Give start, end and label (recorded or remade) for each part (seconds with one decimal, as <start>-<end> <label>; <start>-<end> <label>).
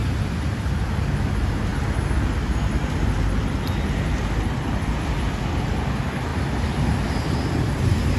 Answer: 0.0-0.9 remade; 0.9-6.3 recorded; 6.3-6.8 remade; 6.8-8.2 recorded